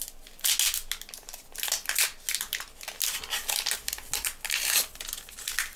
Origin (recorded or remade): recorded